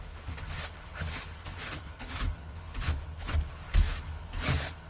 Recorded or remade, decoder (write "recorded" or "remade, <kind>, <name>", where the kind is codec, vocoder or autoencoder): remade, codec, HILCodec